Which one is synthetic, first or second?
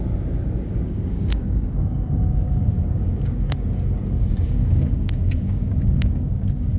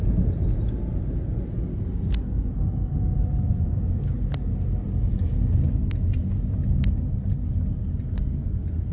first